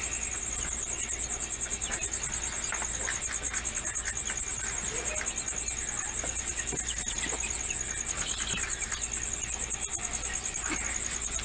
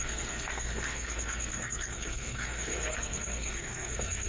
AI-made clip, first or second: second